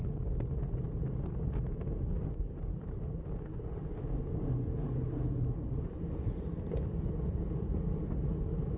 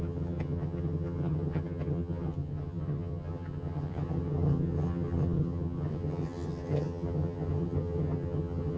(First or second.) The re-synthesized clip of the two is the second